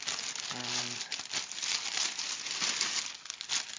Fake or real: real